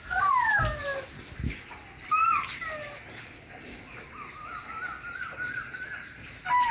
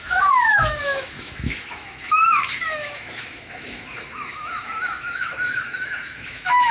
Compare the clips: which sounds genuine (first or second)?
first